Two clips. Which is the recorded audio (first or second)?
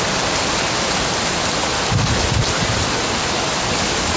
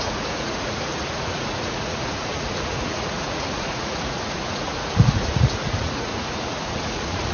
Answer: first